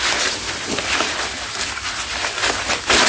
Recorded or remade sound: recorded